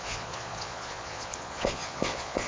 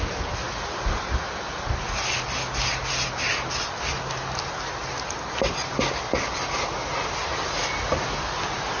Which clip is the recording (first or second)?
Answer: second